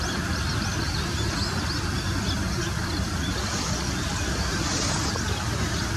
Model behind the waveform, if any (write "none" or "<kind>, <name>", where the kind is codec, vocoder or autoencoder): none